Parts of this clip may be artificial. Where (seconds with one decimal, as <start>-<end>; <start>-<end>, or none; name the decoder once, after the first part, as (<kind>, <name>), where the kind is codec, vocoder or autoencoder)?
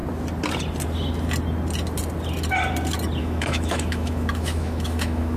3.2-5.4 (autoencoder, DAC-VAE)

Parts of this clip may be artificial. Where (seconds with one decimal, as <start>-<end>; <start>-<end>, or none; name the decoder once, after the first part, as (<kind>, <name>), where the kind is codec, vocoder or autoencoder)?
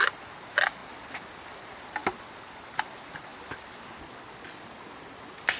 none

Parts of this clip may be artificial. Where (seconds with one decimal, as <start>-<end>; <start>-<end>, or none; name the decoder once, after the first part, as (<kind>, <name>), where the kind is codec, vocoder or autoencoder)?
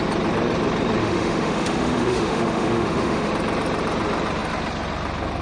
1.0-3.3 (autoencoder, DAC-VAE)